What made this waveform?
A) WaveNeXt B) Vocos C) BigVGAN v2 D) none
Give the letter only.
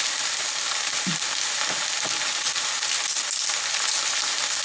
D